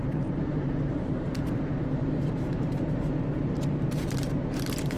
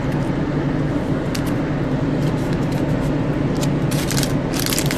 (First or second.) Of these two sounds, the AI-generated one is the first